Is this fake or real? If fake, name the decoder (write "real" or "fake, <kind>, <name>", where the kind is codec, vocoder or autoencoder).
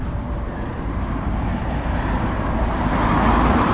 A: fake, vocoder, BigVGAN v2